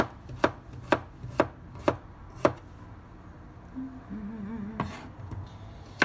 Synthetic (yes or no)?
no